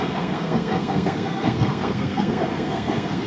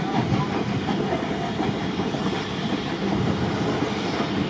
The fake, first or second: first